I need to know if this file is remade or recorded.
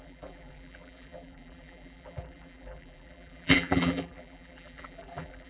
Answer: remade